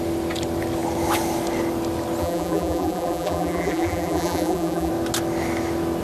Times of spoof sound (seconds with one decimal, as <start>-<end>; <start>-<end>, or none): 2.2-4.9